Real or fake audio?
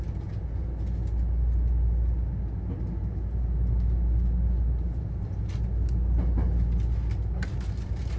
real